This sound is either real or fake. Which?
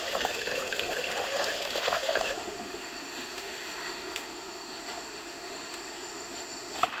fake